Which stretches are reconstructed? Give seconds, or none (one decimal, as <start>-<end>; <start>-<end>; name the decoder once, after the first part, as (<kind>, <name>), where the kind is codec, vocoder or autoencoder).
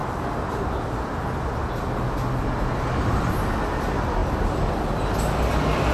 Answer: none